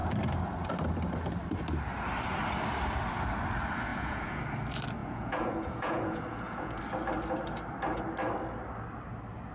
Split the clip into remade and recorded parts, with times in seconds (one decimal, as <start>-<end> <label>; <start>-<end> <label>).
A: 0.0-3.9 recorded; 3.9-4.4 remade; 4.4-5.0 recorded; 5.0-6.8 remade; 6.8-9.5 recorded